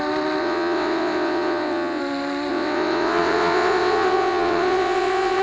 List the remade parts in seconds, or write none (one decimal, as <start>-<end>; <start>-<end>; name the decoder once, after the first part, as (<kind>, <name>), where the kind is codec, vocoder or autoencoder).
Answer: 0.4-2.0 (vocoder, WaveNeXt); 2.5-5.4